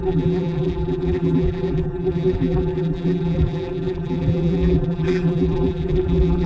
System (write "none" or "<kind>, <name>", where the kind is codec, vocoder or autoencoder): vocoder, BigVGAN v2